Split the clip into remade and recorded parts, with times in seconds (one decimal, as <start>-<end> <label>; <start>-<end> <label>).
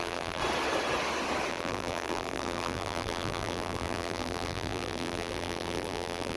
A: 0.0-0.4 remade; 0.4-1.5 recorded; 1.5-6.4 remade